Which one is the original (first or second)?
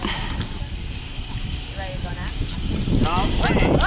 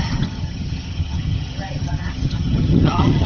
first